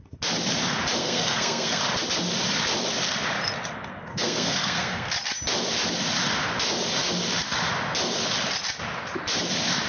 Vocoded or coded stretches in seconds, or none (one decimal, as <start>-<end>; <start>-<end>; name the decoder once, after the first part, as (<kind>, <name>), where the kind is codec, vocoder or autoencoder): 1.0-1.8 (codec, SNAC); 4.1-5.1